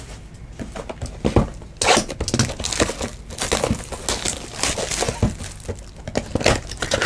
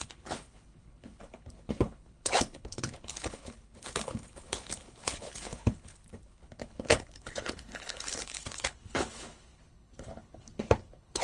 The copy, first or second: second